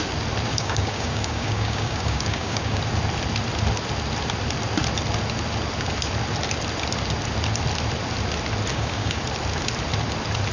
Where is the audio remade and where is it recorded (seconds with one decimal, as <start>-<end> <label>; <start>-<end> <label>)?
0.0-0.5 recorded; 0.5-2.8 remade; 2.8-8.7 recorded; 8.7-9.2 remade; 9.2-10.5 recorded